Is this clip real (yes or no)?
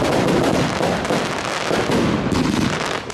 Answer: yes